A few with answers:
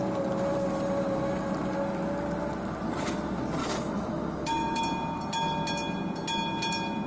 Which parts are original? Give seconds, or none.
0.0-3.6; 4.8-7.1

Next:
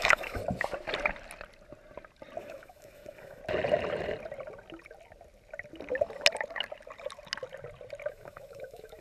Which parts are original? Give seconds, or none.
0.4-2.4; 3.4-8.1

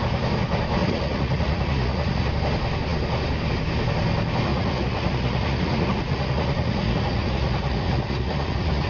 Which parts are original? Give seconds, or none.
0.0-0.8; 2.3-4.5

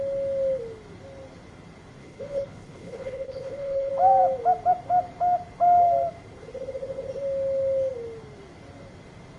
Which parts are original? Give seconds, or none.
0.0-2.0; 3.9-9.4

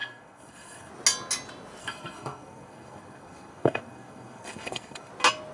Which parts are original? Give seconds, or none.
0.9-1.8; 5.1-5.5

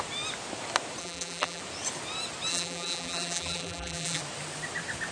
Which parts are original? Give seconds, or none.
0.0-1.0; 1.6-2.5; 4.2-5.1

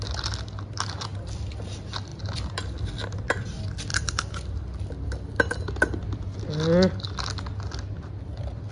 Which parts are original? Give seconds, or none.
0.0-3.9; 5.8-8.7

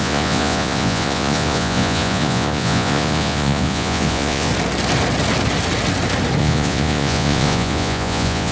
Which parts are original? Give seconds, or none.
4.5-6.4